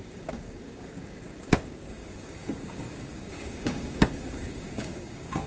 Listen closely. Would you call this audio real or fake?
fake